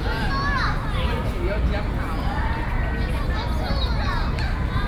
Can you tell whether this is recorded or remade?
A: recorded